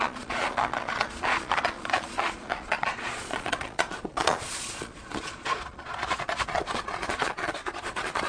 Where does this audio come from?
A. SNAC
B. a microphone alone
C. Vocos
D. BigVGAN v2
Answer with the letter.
C